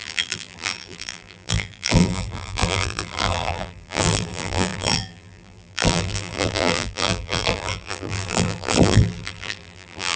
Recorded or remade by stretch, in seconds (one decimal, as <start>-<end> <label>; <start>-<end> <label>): 0.0-10.2 remade